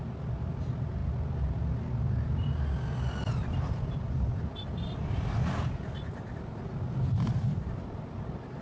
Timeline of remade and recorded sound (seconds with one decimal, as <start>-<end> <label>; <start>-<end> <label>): 0.0-1.0 remade; 1.0-5.1 recorded; 5.1-8.6 remade